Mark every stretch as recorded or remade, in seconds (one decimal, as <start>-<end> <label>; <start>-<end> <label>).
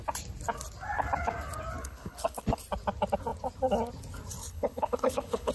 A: 0.0-1.8 recorded; 1.8-2.6 remade; 2.6-4.4 recorded; 4.4-5.5 remade